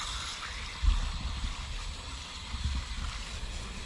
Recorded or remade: recorded